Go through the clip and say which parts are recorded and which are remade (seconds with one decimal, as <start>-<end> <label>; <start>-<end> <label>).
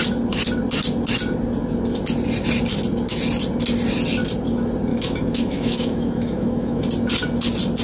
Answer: 0.0-4.9 recorded; 4.9-6.8 remade; 6.8-7.8 recorded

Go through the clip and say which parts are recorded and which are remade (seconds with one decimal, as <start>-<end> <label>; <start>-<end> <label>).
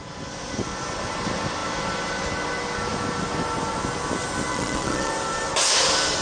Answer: 0.0-4.5 recorded; 4.5-5.1 remade; 5.1-6.2 recorded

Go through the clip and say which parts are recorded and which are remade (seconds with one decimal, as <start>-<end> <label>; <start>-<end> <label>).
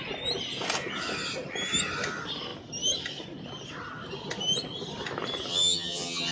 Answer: 0.0-5.5 recorded; 5.5-6.3 remade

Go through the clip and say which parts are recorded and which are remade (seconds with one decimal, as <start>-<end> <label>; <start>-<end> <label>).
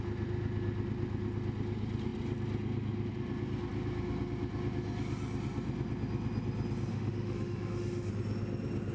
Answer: 0.0-6.9 recorded; 6.9-8.1 remade; 8.1-8.9 recorded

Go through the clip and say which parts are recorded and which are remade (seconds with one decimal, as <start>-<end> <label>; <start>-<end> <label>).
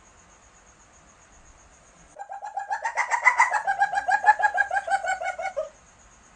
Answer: 0.0-1.7 recorded; 1.7-5.5 remade; 5.5-6.4 recorded